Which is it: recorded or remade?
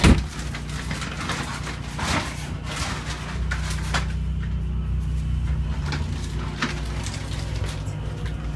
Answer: recorded